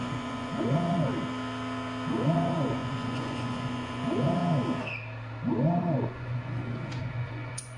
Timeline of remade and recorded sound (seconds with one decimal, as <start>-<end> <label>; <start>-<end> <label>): 0.0-1.1 remade; 1.1-2.1 recorded; 2.1-4.4 remade; 4.4-5.8 recorded; 5.8-7.8 remade